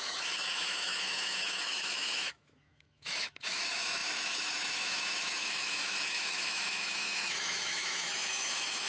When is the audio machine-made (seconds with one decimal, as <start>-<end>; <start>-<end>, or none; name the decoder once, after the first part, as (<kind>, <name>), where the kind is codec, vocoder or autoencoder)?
0.0-8.9 (autoencoder, DAC-VAE)